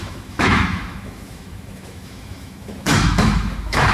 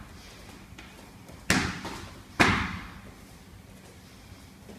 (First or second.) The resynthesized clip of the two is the first